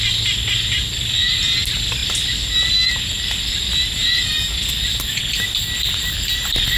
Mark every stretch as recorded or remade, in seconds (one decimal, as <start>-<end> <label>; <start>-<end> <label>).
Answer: 0.0-6.8 recorded